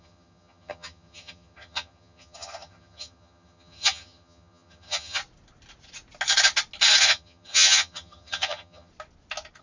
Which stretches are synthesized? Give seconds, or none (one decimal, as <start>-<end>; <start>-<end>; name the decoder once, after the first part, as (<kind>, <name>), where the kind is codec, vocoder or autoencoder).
0.0-5.2 (vocoder, HiFi-GAN); 7.0-8.9